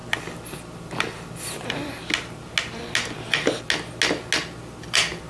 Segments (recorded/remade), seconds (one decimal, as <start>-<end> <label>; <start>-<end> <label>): 0.0-5.3 recorded